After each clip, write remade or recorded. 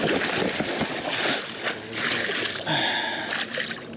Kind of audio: recorded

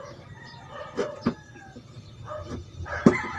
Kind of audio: remade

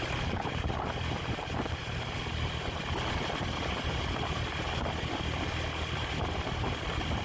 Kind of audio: recorded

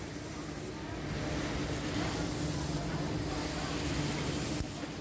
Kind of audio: recorded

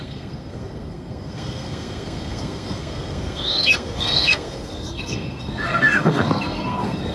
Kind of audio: remade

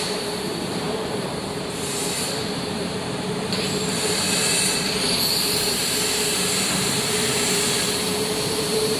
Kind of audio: remade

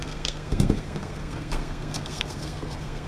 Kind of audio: remade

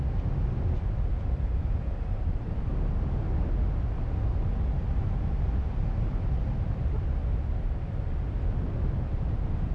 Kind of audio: recorded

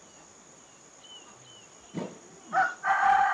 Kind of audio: recorded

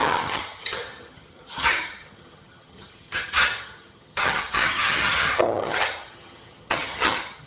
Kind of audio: remade